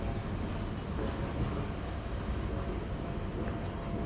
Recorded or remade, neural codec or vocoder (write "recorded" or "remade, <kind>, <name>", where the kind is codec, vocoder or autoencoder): recorded